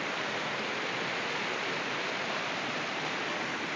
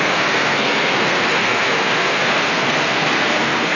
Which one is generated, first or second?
second